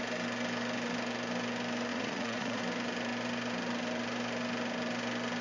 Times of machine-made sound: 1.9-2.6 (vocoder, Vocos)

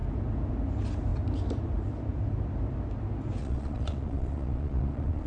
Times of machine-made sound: 3.4-5.3 (vocoder, Vocos)